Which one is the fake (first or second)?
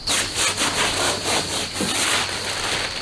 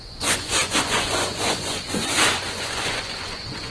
second